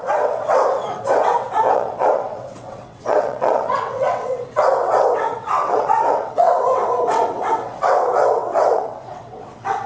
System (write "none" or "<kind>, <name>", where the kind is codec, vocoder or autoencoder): vocoder, WaveNeXt